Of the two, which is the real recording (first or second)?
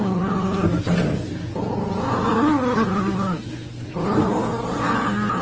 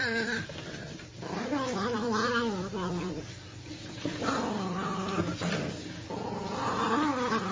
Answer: first